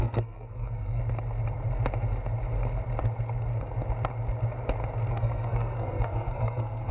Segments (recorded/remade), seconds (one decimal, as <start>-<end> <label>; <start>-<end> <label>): 0.0-1.0 remade; 1.0-5.1 recorded; 5.1-6.9 remade